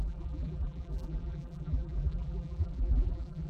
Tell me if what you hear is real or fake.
fake